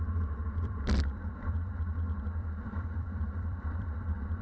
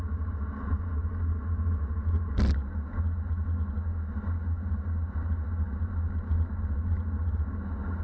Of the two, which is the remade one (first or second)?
first